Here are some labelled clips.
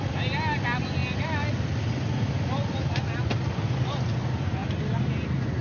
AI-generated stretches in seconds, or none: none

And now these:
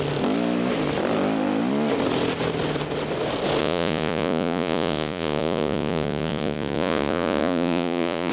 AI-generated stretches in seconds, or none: 3.6-8.3

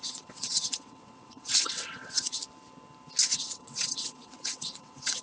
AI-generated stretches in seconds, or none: 0.0-2.4; 3.2-5.2

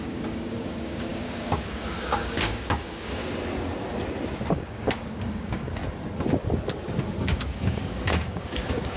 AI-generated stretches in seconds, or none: 0.0-3.2; 4.5-5.8; 7.2-9.0